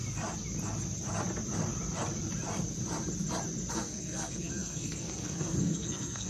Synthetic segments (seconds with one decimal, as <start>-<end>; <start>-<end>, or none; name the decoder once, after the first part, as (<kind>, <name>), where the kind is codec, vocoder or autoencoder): 3.7-6.3 (codec, SNAC)